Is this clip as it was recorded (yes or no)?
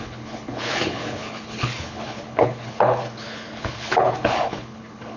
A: no